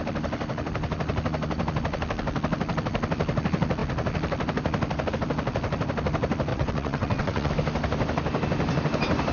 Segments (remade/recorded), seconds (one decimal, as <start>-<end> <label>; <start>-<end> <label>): 0.0-6.5 recorded; 6.5-7.5 remade; 7.5-9.3 recorded